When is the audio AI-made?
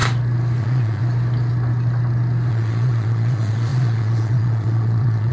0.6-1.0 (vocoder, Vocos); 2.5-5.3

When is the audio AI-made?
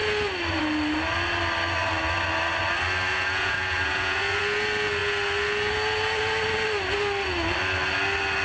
3.1-4.4 (vocoder, Vocos)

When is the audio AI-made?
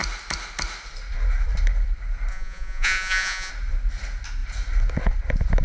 2.3-3.5 (vocoder, Vocos)